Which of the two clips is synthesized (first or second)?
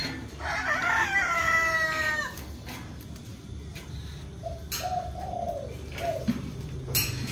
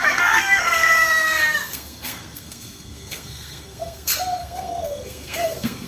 second